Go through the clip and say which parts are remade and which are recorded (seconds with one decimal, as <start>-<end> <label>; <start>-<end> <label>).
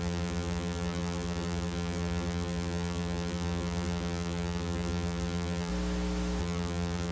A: 0.0-5.7 remade; 5.7-6.4 recorded; 6.4-7.1 remade